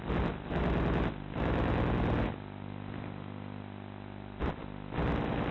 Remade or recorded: recorded